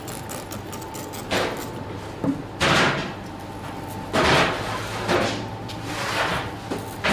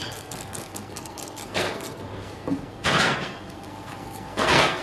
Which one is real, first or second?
first